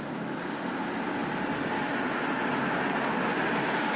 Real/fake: real